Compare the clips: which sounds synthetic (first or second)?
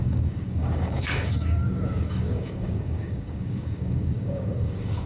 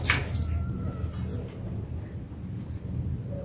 first